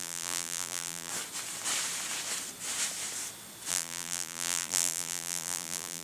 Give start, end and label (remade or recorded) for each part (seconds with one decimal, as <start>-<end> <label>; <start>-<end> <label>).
0.0-1.1 remade; 1.1-3.7 recorded; 3.7-6.0 remade